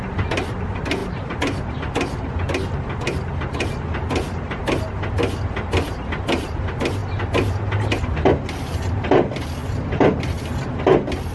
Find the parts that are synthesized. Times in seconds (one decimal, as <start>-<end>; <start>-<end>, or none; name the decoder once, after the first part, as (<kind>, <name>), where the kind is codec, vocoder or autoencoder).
none